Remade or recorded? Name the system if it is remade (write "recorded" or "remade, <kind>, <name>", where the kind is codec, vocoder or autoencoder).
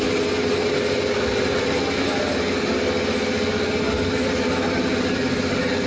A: recorded